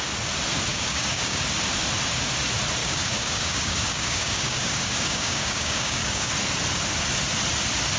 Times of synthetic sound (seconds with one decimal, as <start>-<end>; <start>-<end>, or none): 0.7-1.4; 2.8-6.3